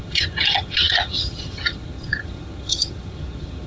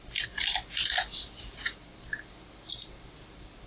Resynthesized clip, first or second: first